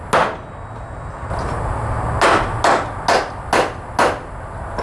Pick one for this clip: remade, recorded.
recorded